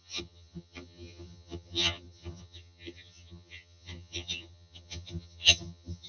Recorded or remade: remade